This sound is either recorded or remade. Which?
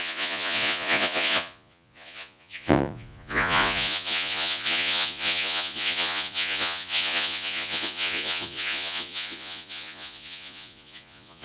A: remade